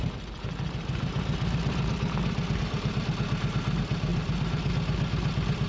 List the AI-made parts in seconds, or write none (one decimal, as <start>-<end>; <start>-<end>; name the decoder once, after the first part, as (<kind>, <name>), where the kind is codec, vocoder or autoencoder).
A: 2.6-3.1 (vocoder, BigVGAN v2); 4.1-4.7